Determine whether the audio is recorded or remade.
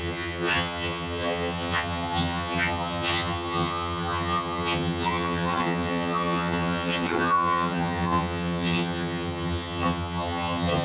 remade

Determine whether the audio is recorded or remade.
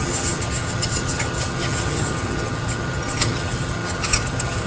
remade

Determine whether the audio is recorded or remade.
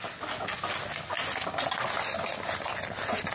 recorded